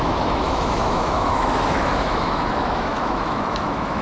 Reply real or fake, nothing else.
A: fake